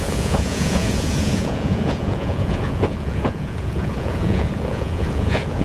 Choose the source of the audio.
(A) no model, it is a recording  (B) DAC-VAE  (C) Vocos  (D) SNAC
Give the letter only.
C